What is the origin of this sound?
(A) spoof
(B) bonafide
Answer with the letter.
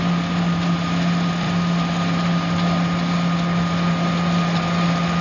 B